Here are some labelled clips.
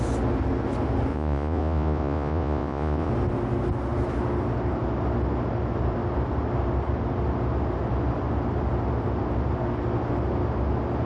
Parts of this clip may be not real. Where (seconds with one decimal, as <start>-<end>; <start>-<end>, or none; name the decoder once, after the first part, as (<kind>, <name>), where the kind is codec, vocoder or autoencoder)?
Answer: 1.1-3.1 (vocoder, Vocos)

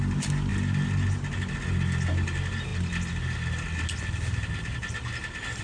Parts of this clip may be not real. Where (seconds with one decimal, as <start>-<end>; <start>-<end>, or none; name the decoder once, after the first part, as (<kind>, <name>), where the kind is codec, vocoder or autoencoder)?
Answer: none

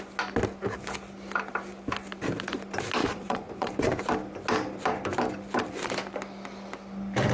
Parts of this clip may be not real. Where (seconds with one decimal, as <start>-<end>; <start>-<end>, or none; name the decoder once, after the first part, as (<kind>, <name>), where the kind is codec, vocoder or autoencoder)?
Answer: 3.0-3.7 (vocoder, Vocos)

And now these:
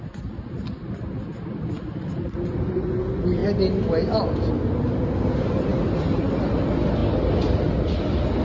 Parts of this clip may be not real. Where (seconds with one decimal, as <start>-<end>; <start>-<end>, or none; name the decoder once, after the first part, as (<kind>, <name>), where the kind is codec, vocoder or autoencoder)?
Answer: none